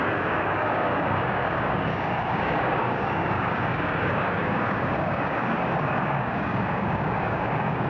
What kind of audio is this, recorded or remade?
remade